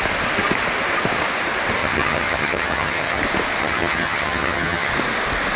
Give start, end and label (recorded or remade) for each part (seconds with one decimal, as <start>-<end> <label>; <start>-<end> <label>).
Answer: 0.0-1.8 recorded; 1.8-3.2 remade; 3.2-3.6 recorded; 3.6-4.9 remade; 4.9-5.6 recorded